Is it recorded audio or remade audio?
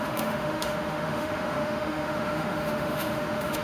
remade